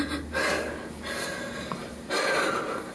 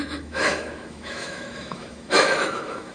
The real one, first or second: first